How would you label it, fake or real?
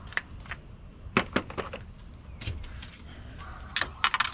real